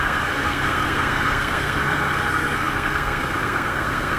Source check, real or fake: fake